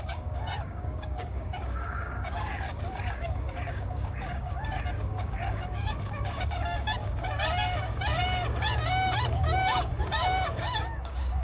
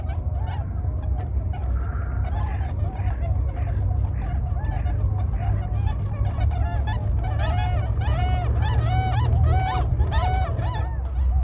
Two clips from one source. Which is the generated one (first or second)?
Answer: first